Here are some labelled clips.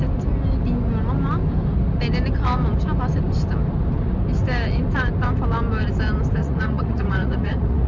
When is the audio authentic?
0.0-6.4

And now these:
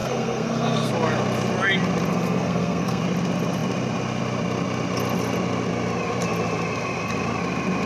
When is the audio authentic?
0.9-2.1; 3.0-7.9

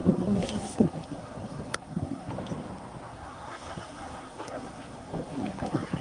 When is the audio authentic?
2.3-3.1

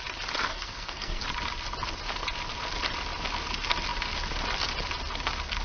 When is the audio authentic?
0.0-0.5; 1.2-5.6

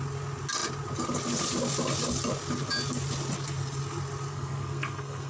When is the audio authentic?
0.0-4.3